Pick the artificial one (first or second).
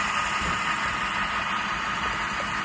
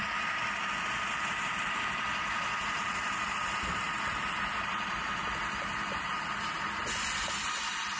second